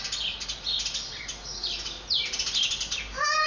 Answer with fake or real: real